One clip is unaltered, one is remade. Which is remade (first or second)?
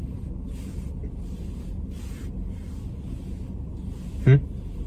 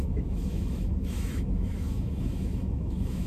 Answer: second